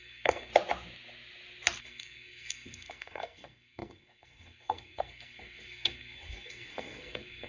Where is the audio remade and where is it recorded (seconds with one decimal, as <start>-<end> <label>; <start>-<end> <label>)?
0.0-0.5 remade; 0.5-1.8 recorded; 1.8-7.5 remade